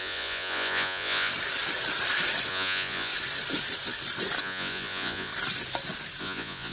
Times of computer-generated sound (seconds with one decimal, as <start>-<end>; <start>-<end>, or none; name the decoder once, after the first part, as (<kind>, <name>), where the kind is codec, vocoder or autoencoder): 0.0-1.3 (vocoder, Vocos); 2.5-3.1; 4.4-5.3; 6.2-6.7